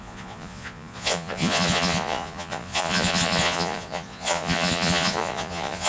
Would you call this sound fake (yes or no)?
yes